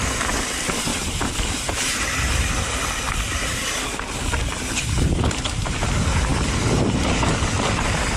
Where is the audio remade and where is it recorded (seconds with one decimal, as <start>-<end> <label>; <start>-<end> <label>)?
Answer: 0.0-8.2 recorded